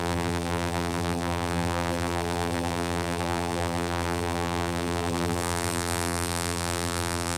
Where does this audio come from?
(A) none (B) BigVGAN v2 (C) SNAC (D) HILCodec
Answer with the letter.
B